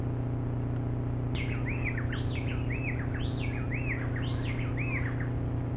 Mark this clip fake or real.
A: real